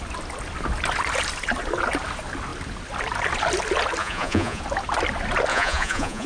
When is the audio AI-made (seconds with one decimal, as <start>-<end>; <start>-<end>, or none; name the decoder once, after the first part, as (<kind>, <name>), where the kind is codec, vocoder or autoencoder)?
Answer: 4.0-4.6 (vocoder, Vocos); 5.5-6.3